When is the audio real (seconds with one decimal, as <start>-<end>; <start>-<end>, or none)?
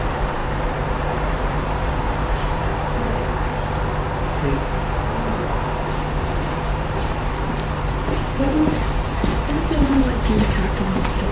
2.7-6.2